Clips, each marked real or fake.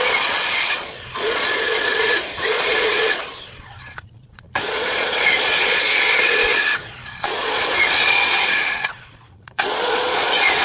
fake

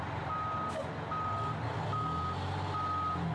real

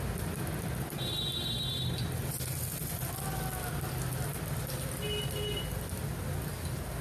real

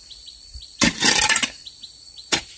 fake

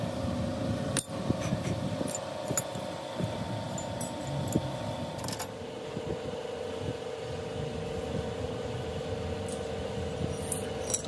real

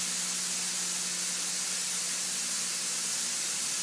real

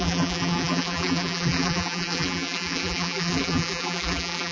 fake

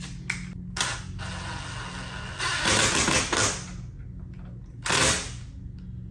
real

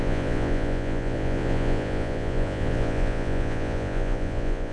fake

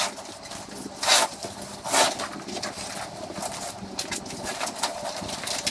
real